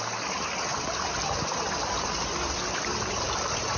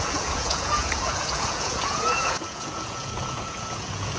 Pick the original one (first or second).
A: first